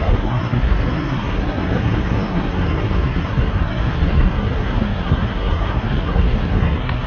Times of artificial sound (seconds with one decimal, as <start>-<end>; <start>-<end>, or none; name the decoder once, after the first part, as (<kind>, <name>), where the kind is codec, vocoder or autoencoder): 0.0-7.1 (codec, SNAC)